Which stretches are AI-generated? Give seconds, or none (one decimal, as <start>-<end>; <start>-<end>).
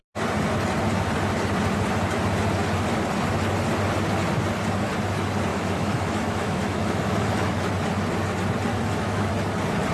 5.5-7.7; 8.7-9.3